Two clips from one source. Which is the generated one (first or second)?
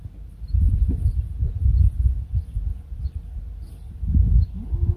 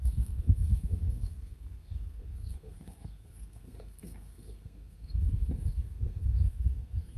second